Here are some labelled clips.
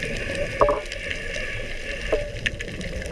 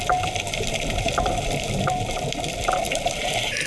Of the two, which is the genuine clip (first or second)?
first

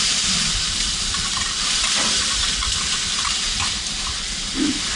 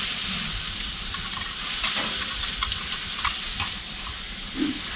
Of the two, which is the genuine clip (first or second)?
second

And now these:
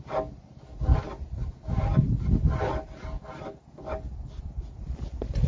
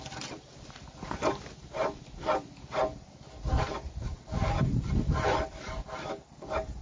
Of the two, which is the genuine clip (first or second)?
first